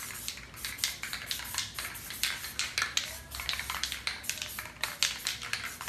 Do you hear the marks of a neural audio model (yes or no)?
no